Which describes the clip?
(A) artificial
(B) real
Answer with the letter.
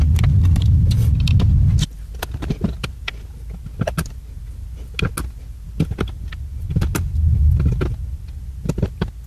B